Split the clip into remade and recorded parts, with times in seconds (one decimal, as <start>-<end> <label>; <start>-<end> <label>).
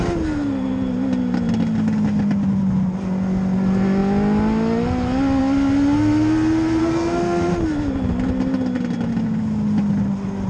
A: 0.0-6.8 recorded; 6.8-7.5 remade; 7.5-10.5 recorded